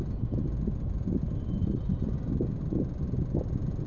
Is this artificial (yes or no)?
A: no